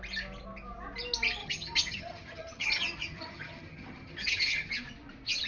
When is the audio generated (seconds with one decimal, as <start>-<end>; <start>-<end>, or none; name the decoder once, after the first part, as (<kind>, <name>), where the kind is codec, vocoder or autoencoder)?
1.4-4.7 (vocoder, HiFi-GAN)

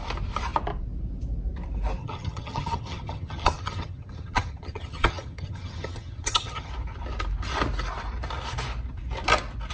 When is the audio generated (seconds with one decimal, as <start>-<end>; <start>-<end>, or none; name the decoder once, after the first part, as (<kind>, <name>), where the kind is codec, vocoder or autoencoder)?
2.0-6.7 (vocoder, HiFi-GAN)

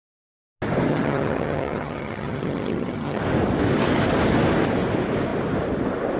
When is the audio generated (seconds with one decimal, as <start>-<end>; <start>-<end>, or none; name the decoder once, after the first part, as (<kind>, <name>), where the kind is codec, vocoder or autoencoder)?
0.9-3.2 (vocoder, HiFi-GAN)

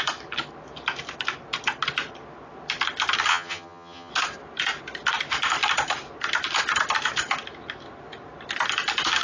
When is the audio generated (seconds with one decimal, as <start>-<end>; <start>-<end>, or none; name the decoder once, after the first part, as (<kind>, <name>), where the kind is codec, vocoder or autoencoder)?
3.3-4.1 (vocoder, HiFi-GAN)